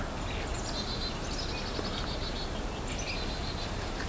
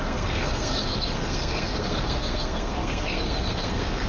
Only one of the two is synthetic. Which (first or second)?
second